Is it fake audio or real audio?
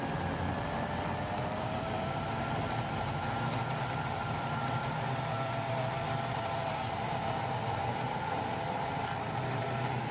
real